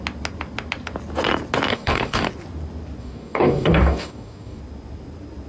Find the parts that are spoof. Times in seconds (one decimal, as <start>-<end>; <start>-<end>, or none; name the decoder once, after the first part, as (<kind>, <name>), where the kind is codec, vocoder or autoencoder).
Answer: 1.7-2.3 (codec, DAC); 3.0-4.6